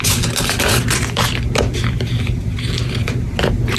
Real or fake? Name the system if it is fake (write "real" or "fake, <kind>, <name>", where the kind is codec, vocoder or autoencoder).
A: real